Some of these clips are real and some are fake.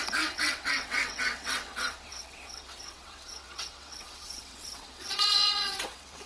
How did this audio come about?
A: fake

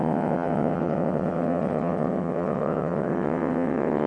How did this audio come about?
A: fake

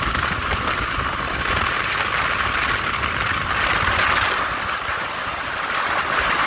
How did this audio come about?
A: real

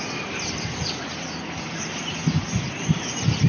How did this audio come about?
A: real